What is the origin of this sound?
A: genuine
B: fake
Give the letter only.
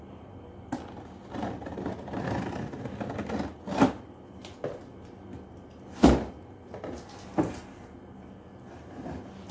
A